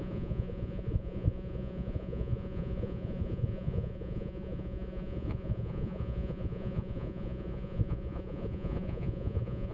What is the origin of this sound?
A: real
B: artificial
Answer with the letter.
B